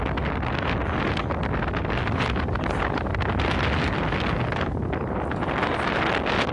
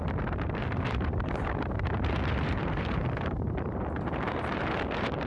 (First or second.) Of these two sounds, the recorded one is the first